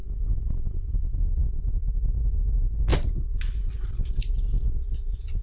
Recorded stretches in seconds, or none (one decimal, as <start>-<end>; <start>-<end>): 1.2-5.4